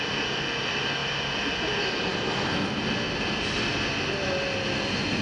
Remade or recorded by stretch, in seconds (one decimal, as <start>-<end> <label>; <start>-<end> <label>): 0.0-5.2 recorded